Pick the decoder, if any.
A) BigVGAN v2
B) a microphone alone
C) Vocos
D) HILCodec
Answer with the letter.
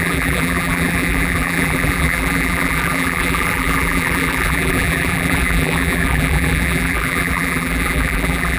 A